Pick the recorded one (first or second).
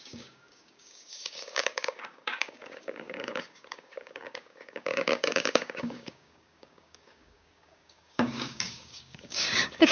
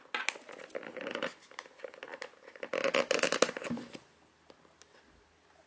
second